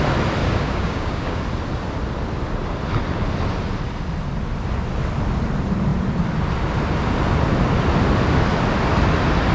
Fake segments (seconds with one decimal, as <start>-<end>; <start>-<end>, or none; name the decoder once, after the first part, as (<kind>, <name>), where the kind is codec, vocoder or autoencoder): 0.4-1.4 (codec, DAC)